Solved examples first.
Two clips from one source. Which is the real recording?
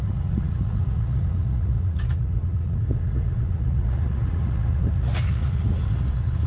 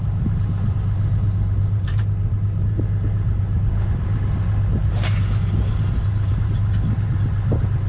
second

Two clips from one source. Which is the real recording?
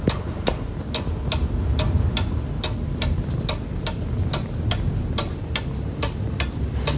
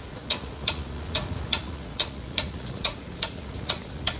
first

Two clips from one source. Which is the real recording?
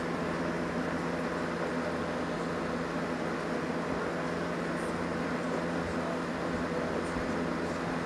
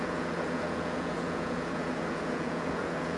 first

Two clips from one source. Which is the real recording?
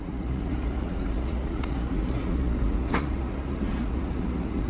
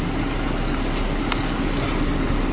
second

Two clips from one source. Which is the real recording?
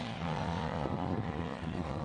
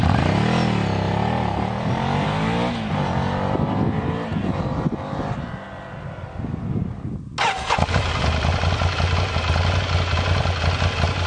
second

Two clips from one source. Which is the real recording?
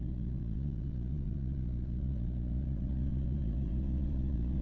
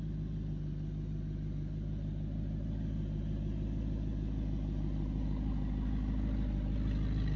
second